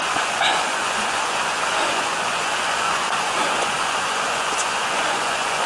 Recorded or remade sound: remade